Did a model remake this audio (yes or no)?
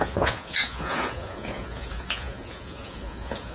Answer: yes